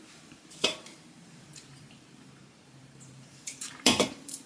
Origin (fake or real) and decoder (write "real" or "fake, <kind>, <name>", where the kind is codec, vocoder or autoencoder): fake, vocoder, BigVGAN v2